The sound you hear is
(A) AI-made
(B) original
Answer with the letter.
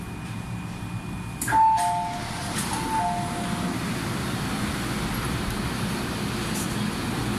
B